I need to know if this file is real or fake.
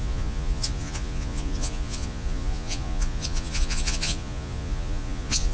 fake